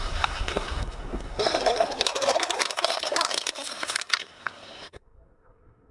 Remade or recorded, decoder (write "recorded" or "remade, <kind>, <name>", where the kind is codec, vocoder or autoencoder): remade, codec, SNAC